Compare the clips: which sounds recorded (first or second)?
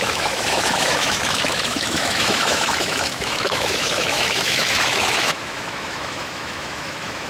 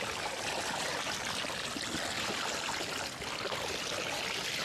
second